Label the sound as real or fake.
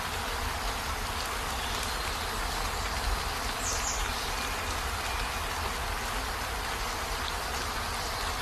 real